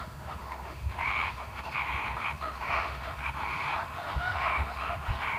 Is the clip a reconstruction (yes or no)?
yes